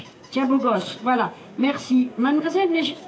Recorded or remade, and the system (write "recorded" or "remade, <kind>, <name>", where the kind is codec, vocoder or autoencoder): remade, codec, DAC